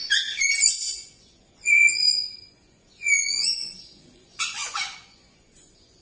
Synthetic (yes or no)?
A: yes